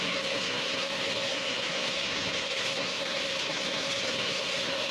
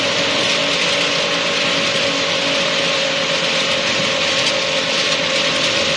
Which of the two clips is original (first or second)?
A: second